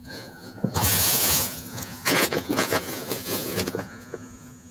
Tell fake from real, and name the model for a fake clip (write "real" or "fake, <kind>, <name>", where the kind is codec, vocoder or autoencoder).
fake, vocoder, Vocos